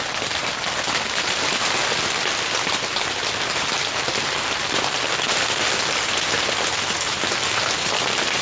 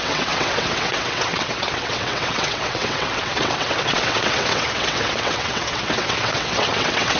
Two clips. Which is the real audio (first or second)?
first